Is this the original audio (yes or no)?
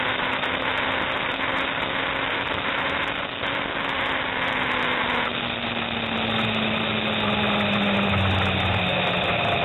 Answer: yes